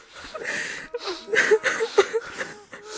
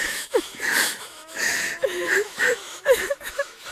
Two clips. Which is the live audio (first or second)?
first